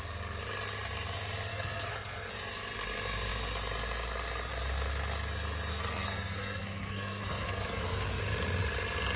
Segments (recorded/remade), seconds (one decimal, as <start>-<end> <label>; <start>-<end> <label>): 0.0-1.5 recorded; 1.5-2.3 remade; 2.3-5.7 recorded; 5.7-8.2 remade; 8.2-9.2 recorded